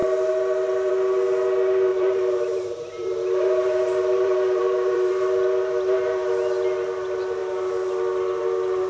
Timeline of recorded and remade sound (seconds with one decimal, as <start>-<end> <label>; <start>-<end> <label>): 0.0-1.9 recorded; 1.9-5.1 remade; 5.1-8.9 recorded